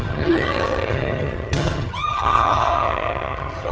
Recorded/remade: remade